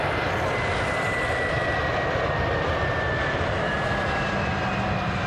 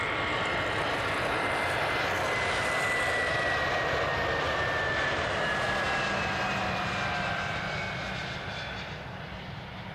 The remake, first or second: first